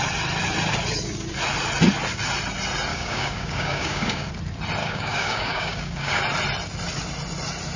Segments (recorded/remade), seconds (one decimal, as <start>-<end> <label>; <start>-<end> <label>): 0.0-2.9 recorded; 2.9-4.3 remade; 4.3-4.8 recorded; 4.8-6.2 remade; 6.2-7.8 recorded